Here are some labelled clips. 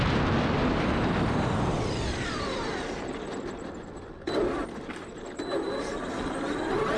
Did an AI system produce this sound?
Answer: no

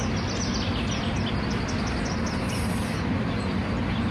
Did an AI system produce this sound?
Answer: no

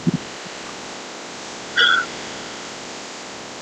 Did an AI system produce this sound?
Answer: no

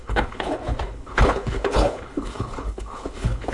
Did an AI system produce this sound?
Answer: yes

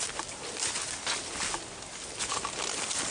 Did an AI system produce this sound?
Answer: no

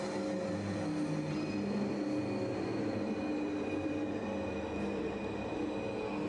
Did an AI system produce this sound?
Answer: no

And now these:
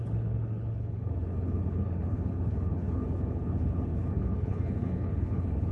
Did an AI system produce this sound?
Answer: yes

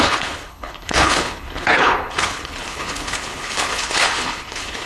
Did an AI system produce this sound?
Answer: yes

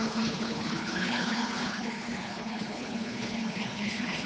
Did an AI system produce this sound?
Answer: yes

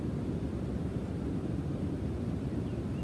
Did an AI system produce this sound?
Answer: no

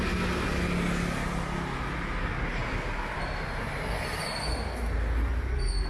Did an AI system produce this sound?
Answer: no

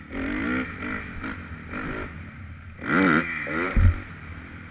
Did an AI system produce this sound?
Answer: no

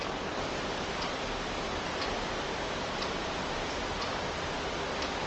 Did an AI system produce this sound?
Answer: no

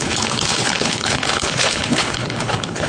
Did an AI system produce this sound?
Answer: yes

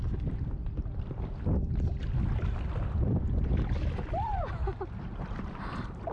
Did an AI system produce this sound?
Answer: no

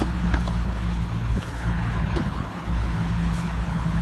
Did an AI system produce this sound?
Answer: yes